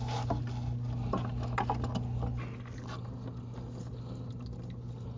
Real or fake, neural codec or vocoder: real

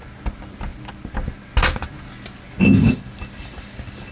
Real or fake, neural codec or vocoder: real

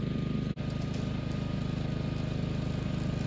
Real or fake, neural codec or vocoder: real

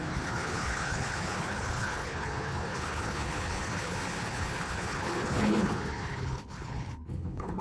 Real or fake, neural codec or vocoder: fake, codec, HILCodec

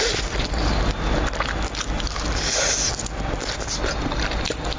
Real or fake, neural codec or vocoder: real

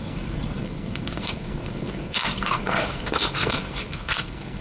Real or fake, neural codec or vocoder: fake, codec, SNAC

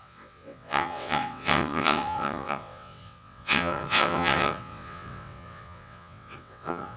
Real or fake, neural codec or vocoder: fake, vocoder, WaveNeXt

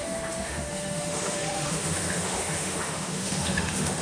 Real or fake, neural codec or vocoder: fake, autoencoder, DAC-VAE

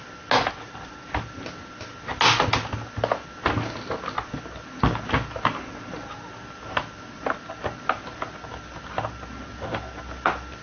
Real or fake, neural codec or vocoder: real